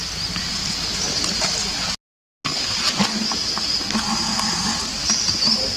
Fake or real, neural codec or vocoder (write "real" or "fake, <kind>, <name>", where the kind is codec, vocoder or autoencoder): real